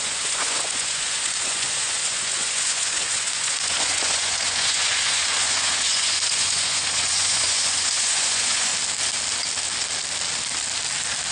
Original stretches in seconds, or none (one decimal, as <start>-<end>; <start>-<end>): 8.7-11.3